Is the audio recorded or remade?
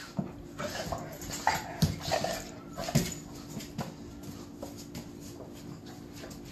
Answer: recorded